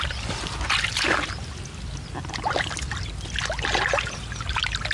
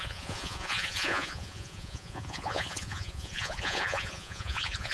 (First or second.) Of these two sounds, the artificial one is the second